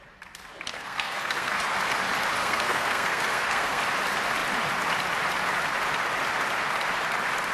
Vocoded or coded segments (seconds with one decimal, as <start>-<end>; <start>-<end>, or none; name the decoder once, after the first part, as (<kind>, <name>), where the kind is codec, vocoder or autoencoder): 0.7-1.6 (codec, SNAC); 2.4-3.8